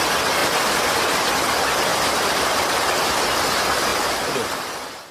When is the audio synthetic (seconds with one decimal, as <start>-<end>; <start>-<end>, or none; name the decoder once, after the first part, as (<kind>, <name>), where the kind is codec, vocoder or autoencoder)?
0.4-1.3 (vocoder, BigVGAN v2); 1.9-2.7